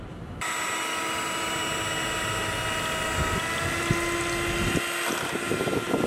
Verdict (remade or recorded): recorded